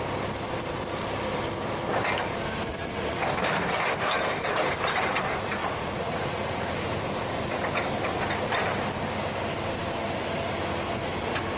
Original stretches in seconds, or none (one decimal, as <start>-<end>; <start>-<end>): 0.0-2.7; 3.2-5.6; 6.7-11.6